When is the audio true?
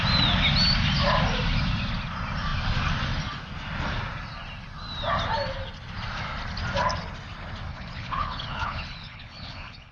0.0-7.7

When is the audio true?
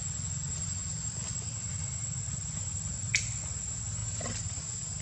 0.0-5.0